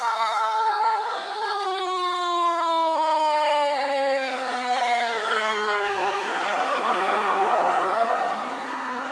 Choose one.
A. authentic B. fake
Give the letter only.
B